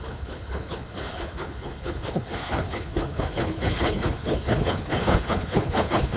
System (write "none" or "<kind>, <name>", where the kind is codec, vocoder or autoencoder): codec, HILCodec